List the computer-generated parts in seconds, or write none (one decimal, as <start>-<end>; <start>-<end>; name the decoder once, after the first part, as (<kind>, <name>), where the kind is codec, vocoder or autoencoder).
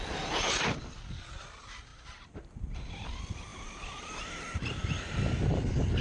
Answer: 1.9-2.4 (vocoder, BigVGAN v2)